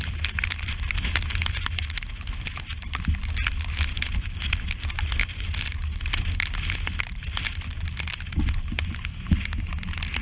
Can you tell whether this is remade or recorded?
recorded